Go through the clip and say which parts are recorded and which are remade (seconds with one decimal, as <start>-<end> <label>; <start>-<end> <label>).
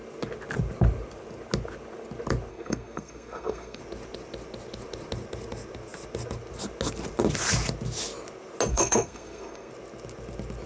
0.0-2.5 recorded; 2.5-3.8 remade; 3.8-8.7 recorded; 8.7-9.7 remade; 9.7-10.7 recorded